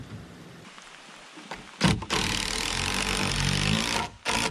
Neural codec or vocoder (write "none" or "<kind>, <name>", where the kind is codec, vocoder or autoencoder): none